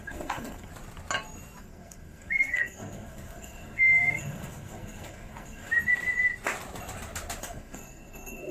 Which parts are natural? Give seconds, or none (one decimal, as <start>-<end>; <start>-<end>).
0.7-1.6; 5.7-7.4